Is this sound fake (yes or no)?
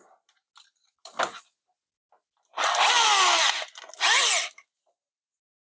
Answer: no